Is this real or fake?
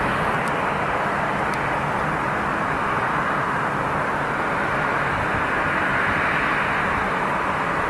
real